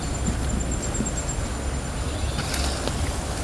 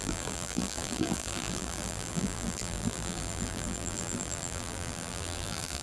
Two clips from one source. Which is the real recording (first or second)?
first